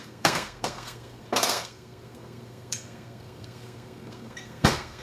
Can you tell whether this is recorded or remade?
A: remade